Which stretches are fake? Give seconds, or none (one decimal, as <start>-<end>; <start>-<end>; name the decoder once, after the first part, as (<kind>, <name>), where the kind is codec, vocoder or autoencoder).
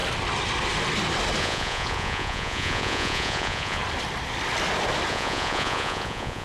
1.4-3.8 (vocoder, Vocos); 5.1-6.4